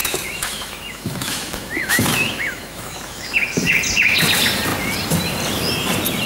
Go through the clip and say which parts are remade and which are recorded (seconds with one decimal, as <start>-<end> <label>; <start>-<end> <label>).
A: 0.0-3.8 remade; 3.8-6.3 recorded